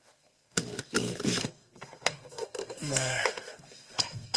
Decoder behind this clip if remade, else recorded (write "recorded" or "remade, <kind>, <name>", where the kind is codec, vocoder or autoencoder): remade, codec, SNAC